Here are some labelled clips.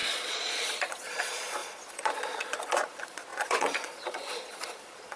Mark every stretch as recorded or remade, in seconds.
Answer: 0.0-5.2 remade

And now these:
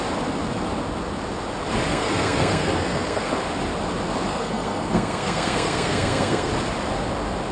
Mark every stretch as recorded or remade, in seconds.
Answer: 0.0-1.9 recorded; 1.9-3.3 remade; 3.3-4.3 recorded; 4.3-6.5 remade; 6.5-7.5 recorded

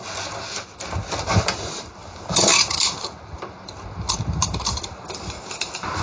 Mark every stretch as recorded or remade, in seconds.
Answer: 0.0-2.5 recorded; 2.5-6.0 remade

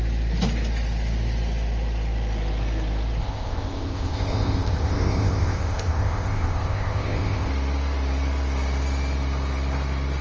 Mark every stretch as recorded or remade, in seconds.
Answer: 0.0-3.2 recorded; 3.2-7.5 remade; 7.5-10.2 recorded

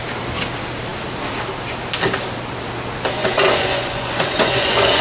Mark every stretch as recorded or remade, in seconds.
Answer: 0.0-3.2 recorded; 3.2-5.0 remade